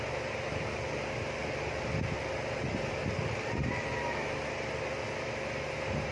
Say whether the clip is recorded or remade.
recorded